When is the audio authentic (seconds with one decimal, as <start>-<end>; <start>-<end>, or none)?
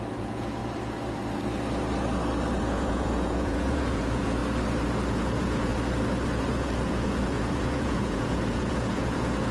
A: 0.6-2.6; 4.4-5.1; 5.7-6.4